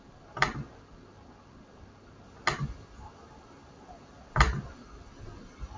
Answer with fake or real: real